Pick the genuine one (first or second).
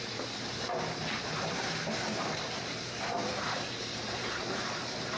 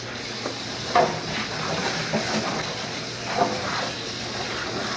second